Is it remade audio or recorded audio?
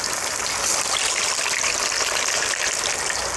recorded